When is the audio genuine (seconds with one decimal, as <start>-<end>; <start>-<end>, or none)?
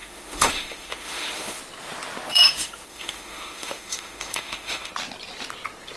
1.6-2.3; 4.9-6.0